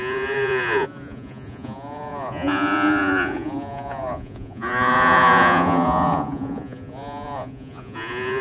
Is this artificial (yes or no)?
yes